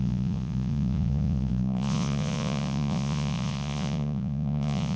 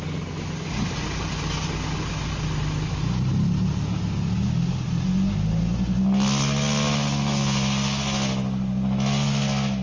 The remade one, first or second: first